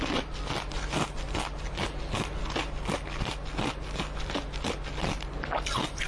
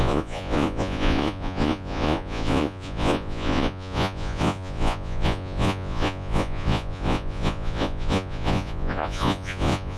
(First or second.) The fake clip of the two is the second